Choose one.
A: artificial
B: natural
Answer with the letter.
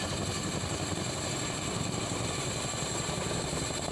B